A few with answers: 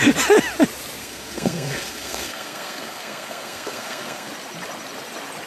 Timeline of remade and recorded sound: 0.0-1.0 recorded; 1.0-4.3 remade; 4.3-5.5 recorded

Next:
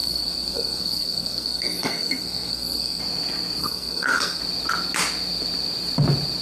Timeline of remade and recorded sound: 0.0-3.0 remade; 3.0-3.6 recorded; 3.6-4.4 remade; 4.4-6.4 recorded

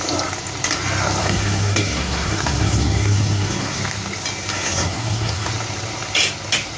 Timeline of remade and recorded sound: 0.0-1.2 recorded; 1.2-3.8 remade; 3.8-4.5 recorded; 4.5-5.5 remade; 5.5-6.8 recorded

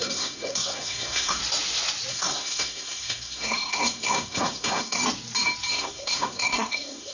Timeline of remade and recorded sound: 0.0-1.4 remade; 1.4-2.1 recorded; 2.1-5.0 remade; 5.0-5.7 recorded; 5.7-7.1 remade

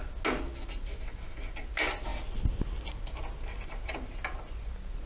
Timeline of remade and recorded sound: 0.0-5.1 recorded

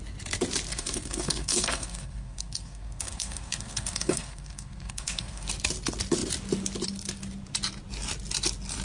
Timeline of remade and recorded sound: 0.0-0.7 recorded; 0.7-5.5 remade; 5.5-8.8 recorded

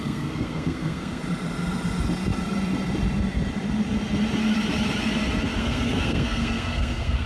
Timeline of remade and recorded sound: 0.0-1.2 remade; 1.2-5.6 recorded; 5.6-7.3 remade